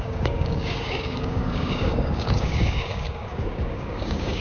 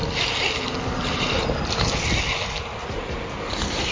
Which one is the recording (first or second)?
second